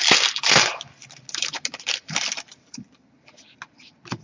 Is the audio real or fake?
real